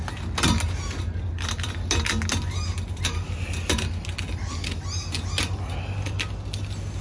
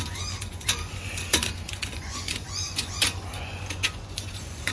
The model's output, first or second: second